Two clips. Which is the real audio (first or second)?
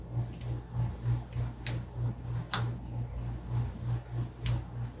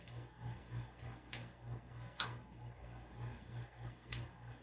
first